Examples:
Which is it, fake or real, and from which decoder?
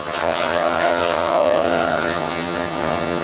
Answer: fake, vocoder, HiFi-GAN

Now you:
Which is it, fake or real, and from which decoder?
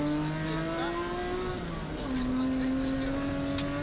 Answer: real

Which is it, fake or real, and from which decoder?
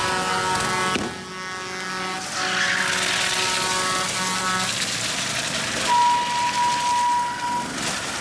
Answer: real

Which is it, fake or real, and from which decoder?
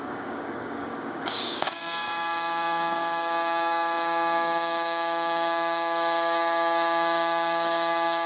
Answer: fake, codec, DAC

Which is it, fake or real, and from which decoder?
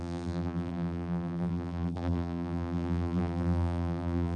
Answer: fake, vocoder, BigVGAN v2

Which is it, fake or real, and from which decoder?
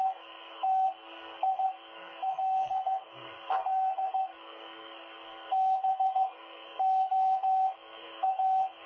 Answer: fake, codec, SNAC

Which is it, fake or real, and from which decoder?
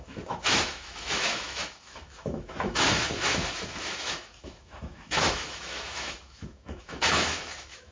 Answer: fake, autoencoder, DAC-VAE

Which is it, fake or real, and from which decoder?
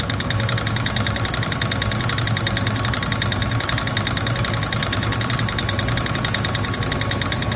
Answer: real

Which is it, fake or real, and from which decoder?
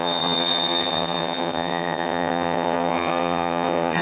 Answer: fake, vocoder, HiFi-GAN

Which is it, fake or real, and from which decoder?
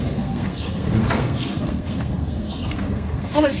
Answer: fake, codec, SNAC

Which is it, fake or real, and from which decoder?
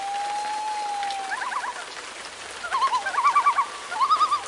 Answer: real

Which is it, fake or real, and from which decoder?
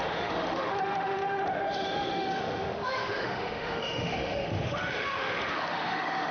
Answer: fake, autoencoder, DAC-VAE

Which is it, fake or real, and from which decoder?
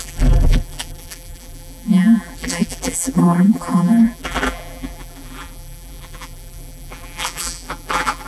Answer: fake, vocoder, BigVGAN v2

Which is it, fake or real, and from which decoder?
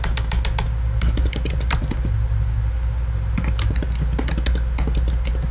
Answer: real